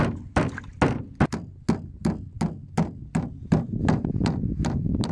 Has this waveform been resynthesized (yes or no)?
no